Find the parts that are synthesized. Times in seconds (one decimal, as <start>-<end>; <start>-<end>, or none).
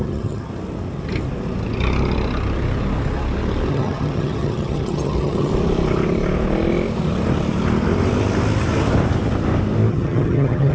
0.0-0.5; 3.7-5.5; 9.9-10.7